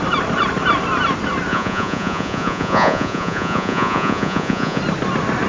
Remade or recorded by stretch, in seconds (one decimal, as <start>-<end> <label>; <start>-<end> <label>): 0.0-1.5 recorded; 1.5-4.8 remade; 4.8-5.5 recorded